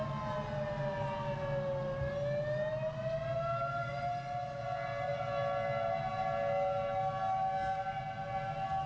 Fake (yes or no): no